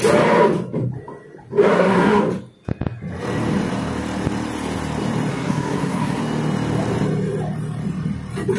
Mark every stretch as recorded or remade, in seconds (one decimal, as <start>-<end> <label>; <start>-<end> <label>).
0.0-1.6 recorded; 1.6-2.2 remade; 2.2-5.3 recorded; 5.3-6.2 remade; 6.2-8.6 recorded